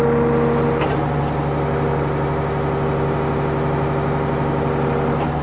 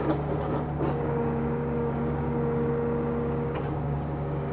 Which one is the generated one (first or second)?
second